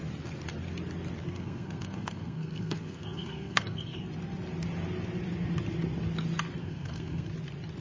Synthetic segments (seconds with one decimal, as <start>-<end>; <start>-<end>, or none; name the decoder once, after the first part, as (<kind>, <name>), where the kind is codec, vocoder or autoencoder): 1.2-4.1 (codec, SNAC); 6.6-7.3